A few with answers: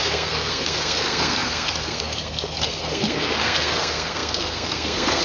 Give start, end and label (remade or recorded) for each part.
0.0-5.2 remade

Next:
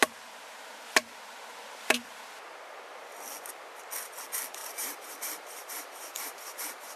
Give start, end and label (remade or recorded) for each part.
0.0-4.6 recorded; 4.6-7.0 remade

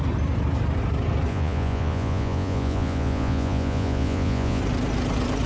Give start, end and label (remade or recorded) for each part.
0.0-1.3 recorded; 1.3-4.6 remade; 4.6-5.5 recorded

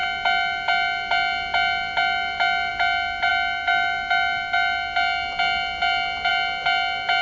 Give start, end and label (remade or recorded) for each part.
0.0-7.2 recorded

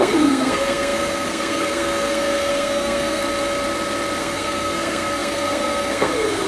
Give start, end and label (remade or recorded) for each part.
0.0-3.2 remade; 3.2-4.2 recorded; 4.2-6.5 remade

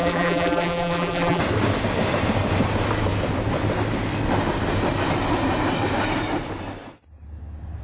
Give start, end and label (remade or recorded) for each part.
0.0-1.4 remade; 1.4-7.8 recorded

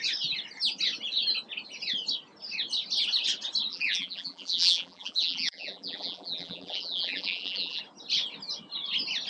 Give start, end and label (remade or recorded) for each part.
0.0-3.7 recorded; 3.7-7.8 remade; 7.8-9.3 recorded